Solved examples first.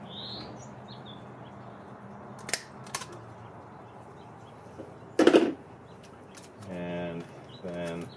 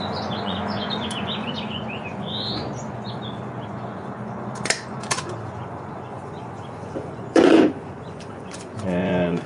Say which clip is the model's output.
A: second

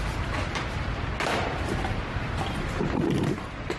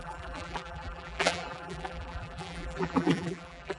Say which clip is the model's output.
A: second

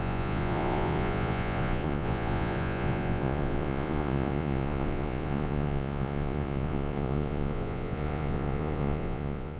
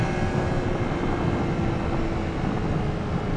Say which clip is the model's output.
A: first